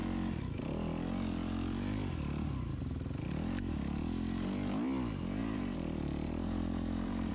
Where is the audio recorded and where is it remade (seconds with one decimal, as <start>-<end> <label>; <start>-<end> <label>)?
0.0-5.4 recorded; 5.4-7.3 remade